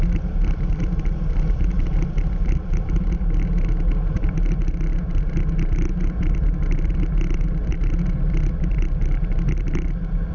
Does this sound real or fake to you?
fake